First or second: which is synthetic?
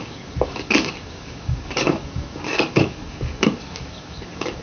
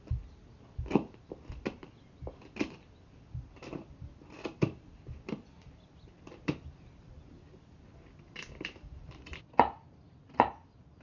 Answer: first